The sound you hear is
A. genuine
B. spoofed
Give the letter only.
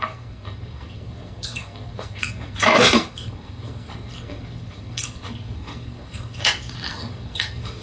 B